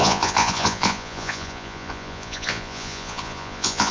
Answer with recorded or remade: remade